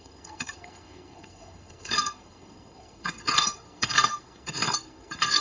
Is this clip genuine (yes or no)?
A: no